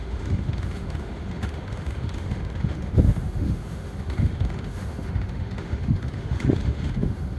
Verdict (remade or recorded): remade